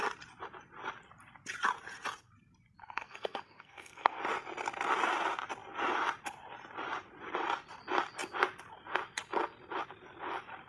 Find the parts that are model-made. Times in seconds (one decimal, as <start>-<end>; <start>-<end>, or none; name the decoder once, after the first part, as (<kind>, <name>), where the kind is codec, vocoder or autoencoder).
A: 2.8-4.2 (codec, SNAC)